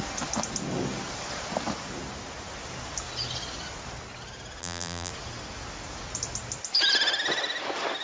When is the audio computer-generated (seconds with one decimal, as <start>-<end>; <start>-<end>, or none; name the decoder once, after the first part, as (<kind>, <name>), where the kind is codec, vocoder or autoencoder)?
4.6-5.1 (vocoder, BigVGAN v2)